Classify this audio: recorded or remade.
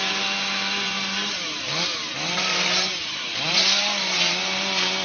remade